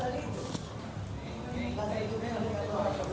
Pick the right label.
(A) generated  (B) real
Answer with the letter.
B